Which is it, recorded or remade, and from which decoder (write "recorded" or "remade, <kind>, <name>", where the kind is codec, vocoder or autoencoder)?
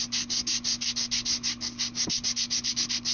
recorded